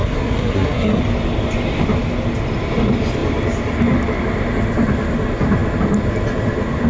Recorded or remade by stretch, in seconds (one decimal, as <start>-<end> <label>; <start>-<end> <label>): 0.0-1.0 remade; 1.0-6.9 recorded